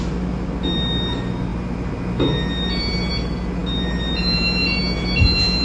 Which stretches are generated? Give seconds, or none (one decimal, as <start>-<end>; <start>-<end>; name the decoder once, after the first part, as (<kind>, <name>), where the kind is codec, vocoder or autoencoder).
none